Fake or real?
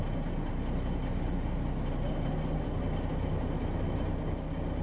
real